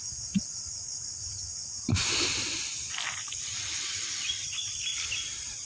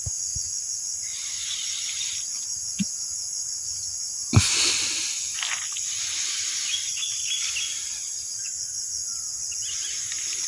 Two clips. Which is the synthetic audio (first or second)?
first